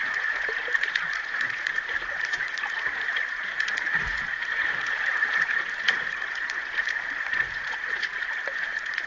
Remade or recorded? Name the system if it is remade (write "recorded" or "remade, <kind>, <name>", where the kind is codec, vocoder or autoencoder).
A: remade, vocoder, Vocos